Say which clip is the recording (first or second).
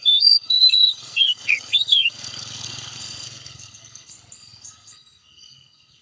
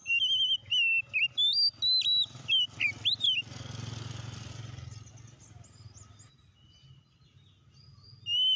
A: second